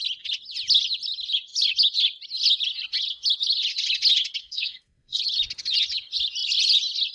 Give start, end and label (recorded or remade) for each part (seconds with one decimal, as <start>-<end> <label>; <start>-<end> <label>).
0.0-4.4 recorded; 4.4-5.2 remade; 5.2-7.1 recorded